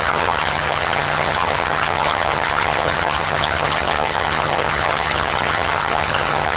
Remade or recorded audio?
remade